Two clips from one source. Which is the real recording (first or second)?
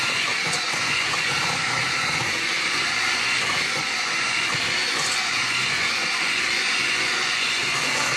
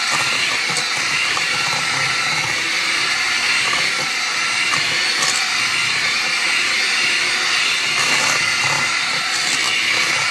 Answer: second